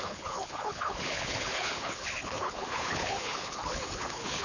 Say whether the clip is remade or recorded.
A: remade